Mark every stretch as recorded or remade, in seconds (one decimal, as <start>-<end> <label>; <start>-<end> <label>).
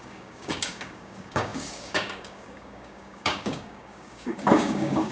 0.0-5.1 remade